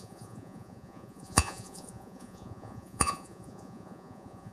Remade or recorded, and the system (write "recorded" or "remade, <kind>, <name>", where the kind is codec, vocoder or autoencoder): remade, vocoder, Vocos